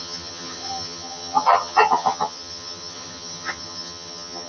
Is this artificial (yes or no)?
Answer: yes